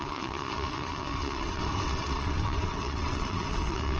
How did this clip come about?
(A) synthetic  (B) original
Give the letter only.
A